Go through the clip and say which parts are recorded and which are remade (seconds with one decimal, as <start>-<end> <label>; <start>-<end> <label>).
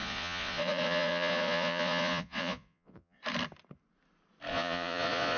0.0-3.2 remade; 3.2-4.5 recorded; 4.5-5.4 remade